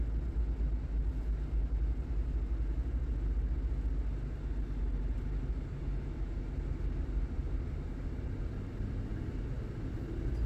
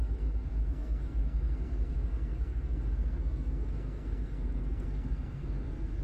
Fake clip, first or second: second